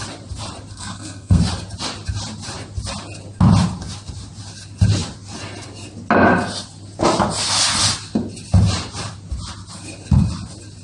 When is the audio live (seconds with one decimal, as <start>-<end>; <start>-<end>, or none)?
0.0-0.7; 1.4-10.8

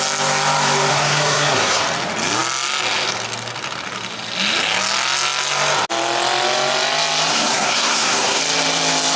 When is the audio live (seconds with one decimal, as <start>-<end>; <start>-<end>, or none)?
0.0-0.9; 1.8-7.3; 8.4-9.2

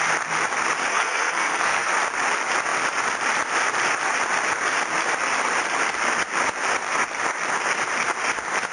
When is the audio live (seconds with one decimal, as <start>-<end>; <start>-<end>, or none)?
0.0-0.9; 1.9-8.7

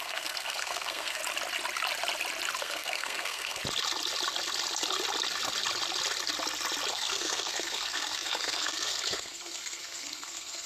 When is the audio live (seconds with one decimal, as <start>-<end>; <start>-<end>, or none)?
1.2-2.6; 3.6-6.9

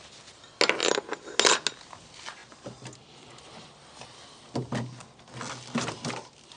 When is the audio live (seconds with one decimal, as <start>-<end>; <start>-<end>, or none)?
0.0-6.6